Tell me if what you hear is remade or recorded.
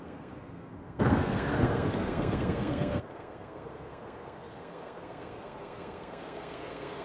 remade